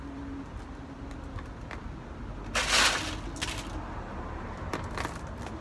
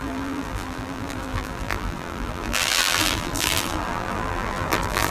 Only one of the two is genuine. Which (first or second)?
first